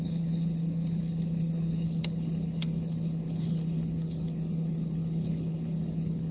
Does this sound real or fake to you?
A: fake